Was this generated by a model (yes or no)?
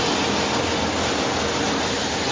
no